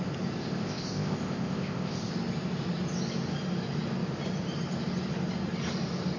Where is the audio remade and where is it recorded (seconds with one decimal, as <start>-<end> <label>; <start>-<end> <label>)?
0.0-0.4 recorded; 0.4-2.1 remade; 2.1-6.2 recorded